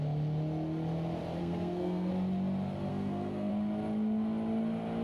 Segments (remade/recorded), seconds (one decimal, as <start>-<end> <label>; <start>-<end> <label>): 0.0-1.4 recorded; 1.4-2.1 remade; 2.1-2.9 recorded; 2.9-3.5 remade; 3.5-5.0 recorded